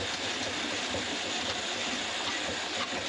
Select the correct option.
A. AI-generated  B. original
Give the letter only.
B